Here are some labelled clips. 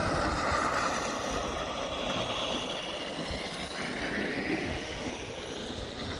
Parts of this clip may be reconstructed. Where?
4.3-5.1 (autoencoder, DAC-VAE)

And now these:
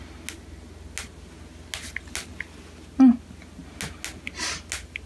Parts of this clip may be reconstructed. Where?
none

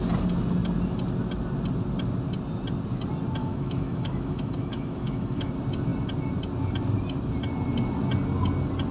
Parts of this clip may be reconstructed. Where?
3.4-5.5 (autoencoder, DAC-VAE)

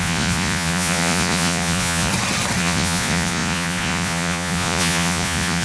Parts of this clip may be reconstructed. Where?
0.0-2.1 (vocoder, Vocos); 2.6-5.6

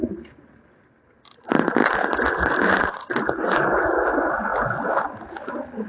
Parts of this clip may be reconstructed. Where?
none

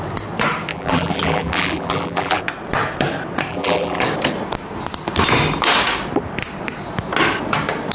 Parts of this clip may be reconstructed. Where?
0.7-2.4 (vocoder, BigVGAN v2); 3.5-4.0

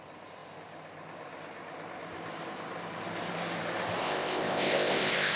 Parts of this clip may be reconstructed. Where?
4.0-5.4 (codec, ZipCodec)

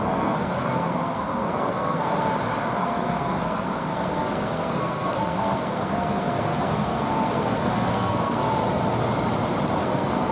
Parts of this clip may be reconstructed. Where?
0.0-2.3 (codec, SNAC); 2.8-8.6; 9.8-10.3